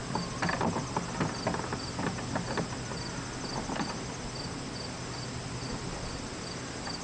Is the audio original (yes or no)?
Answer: yes